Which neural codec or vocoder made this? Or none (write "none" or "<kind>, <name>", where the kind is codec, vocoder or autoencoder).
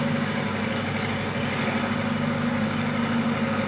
none